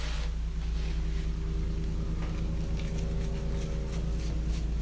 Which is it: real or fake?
real